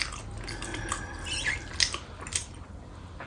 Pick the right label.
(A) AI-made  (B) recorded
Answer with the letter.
B